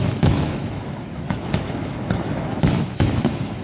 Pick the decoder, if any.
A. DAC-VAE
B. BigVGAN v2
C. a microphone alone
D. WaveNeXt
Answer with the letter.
A